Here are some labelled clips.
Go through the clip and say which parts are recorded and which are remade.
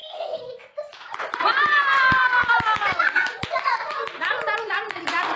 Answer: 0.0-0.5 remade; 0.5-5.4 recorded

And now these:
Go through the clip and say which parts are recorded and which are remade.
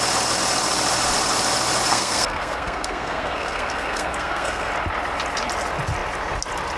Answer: 0.0-1.9 recorded; 1.9-4.7 remade; 4.7-6.8 recorded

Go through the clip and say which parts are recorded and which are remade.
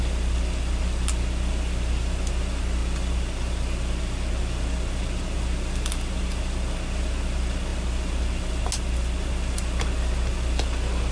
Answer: 0.0-11.1 recorded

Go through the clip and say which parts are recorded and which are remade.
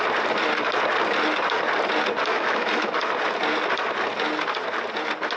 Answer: 0.0-2.3 recorded; 2.3-2.9 remade; 2.9-5.4 recorded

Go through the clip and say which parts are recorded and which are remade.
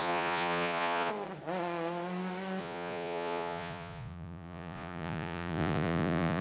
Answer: 0.0-1.1 remade; 1.1-2.6 recorded; 2.6-6.4 remade